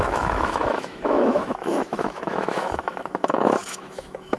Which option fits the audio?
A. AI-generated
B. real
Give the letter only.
A